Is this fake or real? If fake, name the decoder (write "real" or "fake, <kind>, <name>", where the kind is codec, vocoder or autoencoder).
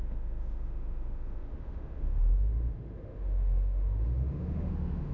fake, autoencoder, DAC-VAE